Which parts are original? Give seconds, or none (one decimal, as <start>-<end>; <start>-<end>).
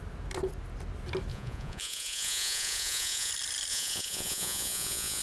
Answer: 0.0-1.3; 3.3-3.7